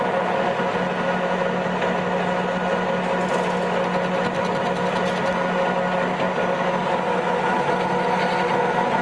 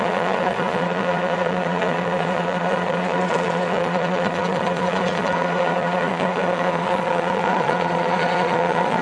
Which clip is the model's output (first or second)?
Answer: second